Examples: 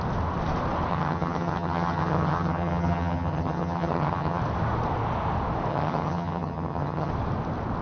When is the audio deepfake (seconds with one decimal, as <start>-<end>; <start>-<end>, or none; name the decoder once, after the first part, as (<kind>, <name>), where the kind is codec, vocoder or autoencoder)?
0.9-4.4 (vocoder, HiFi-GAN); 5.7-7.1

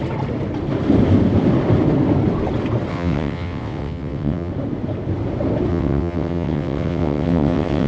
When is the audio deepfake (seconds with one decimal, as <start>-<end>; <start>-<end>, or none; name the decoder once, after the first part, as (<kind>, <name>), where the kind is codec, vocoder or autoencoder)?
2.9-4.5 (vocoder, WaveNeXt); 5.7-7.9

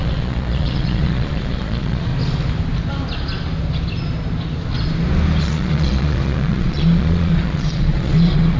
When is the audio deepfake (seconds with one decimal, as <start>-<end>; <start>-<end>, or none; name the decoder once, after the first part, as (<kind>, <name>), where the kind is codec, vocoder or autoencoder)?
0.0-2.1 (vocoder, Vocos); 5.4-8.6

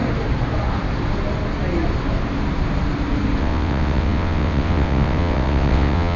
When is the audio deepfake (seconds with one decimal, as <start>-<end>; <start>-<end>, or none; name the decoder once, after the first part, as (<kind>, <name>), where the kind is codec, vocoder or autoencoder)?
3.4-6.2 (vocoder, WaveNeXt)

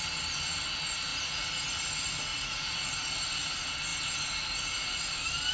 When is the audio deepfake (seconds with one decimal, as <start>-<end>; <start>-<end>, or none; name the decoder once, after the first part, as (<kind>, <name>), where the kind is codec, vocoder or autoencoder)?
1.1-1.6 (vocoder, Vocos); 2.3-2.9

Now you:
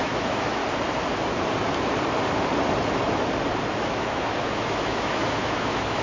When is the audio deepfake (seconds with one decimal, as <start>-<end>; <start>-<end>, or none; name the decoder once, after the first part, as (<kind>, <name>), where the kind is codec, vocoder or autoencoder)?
0.0-0.6 (autoencoder, DAC-VAE); 3.7-6.0

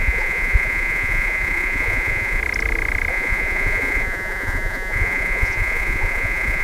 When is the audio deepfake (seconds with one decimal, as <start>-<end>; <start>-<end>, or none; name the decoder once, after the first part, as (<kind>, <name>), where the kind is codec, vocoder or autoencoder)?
0.0-2.4 (vocoder, Vocos); 3.1-6.6

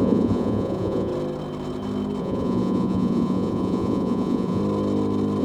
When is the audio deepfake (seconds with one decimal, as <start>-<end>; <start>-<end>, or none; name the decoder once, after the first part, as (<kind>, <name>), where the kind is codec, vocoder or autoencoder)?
0.0-1.1 (vocoder, Vocos); 2.2-4.6